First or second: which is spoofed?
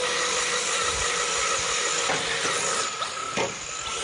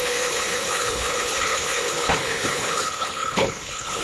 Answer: second